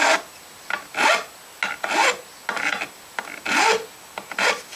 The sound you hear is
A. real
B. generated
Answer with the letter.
A